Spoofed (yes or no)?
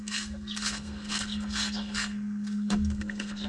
yes